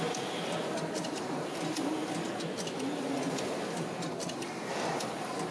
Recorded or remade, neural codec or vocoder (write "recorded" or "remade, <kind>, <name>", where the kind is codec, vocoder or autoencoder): recorded